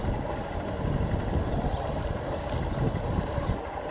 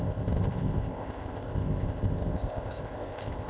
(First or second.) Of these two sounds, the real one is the first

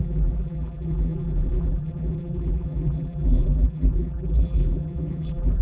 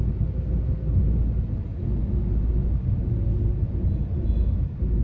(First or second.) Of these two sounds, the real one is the second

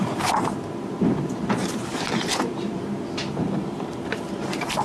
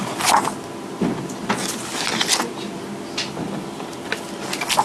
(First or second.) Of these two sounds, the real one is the second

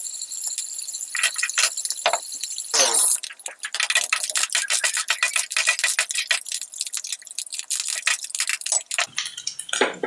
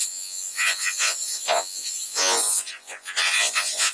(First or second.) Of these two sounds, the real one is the first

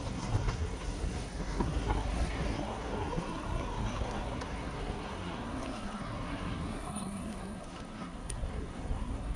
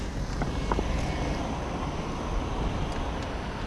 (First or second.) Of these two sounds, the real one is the second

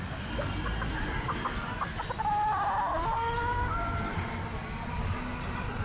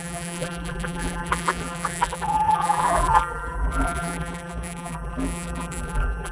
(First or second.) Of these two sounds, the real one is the first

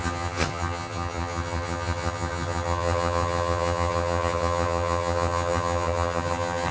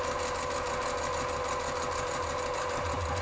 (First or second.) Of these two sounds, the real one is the second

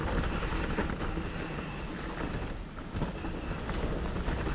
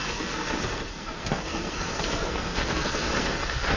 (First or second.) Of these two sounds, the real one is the first